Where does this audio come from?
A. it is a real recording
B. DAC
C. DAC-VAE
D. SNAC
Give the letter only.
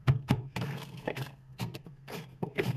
D